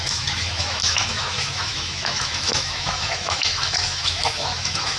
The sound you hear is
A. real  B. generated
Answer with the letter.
B